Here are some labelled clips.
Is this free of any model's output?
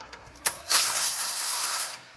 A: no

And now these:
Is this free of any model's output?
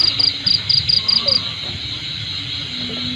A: yes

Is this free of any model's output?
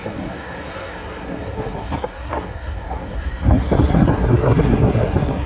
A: no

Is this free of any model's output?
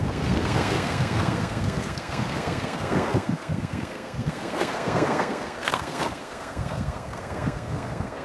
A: no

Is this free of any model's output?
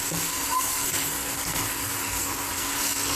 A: no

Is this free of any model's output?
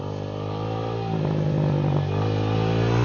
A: yes